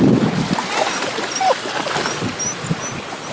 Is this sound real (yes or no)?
yes